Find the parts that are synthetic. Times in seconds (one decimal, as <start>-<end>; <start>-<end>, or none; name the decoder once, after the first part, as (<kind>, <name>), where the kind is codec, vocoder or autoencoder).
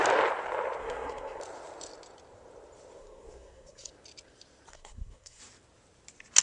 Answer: 0.8-1.4 (codec, SNAC); 3.0-3.9; 4.7-5.4